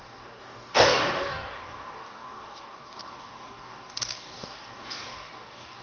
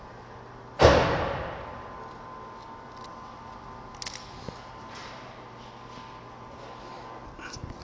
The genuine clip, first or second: second